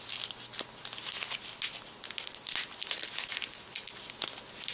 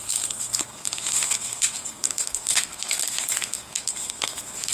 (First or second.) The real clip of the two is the first